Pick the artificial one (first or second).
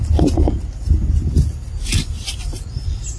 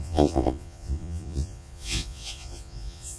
second